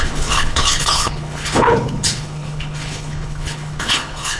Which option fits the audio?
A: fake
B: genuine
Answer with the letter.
A